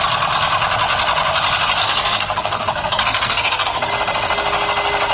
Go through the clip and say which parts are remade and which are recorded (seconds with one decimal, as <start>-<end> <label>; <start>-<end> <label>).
0.0-1.8 recorded; 1.8-3.9 remade; 3.9-5.1 recorded